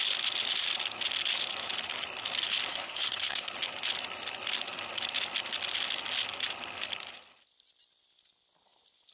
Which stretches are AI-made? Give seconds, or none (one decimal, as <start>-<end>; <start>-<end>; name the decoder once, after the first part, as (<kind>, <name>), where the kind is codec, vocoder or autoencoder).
2.7-3.5 (codec, SNAC)